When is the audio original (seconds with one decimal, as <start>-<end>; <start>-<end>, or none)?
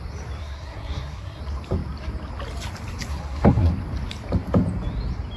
0.0-0.4; 1.4-3.1; 3.7-5.4